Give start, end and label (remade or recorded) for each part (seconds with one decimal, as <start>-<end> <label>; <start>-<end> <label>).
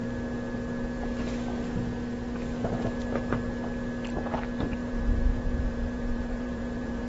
0.0-4.8 recorded; 4.8-7.1 remade